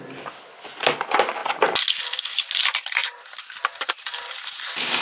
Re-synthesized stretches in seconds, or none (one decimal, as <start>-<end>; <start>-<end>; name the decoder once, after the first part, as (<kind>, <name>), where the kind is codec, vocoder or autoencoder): none